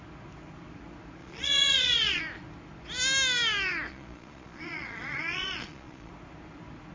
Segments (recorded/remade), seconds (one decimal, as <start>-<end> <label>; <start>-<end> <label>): 0.0-1.2 recorded; 1.2-2.2 remade; 2.2-3.9 recorded; 3.9-6.1 remade; 6.1-6.9 recorded